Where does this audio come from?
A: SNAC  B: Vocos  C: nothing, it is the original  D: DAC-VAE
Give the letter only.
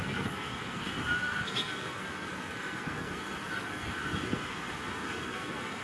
A